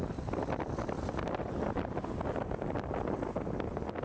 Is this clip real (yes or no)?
yes